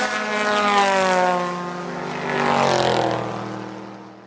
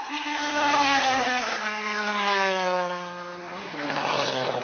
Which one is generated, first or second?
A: second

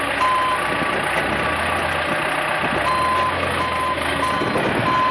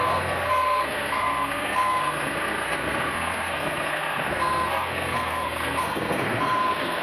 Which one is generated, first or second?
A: second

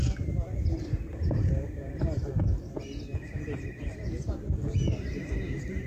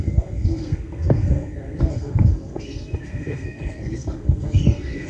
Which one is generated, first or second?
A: second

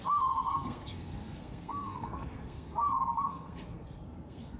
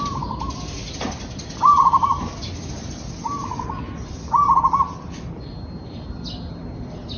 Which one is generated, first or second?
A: first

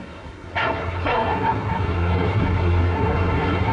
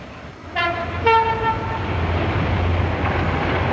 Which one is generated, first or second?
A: first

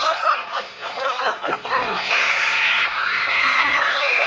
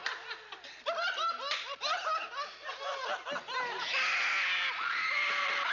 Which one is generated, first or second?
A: first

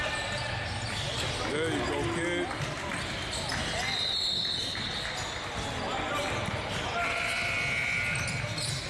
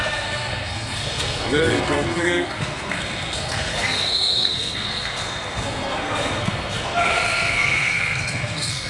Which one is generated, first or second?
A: second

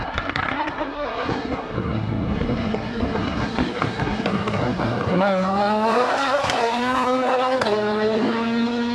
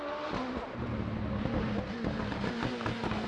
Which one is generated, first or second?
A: first